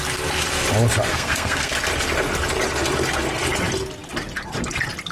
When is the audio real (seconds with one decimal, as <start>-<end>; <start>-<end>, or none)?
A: 0.0-1.1; 1.7-5.1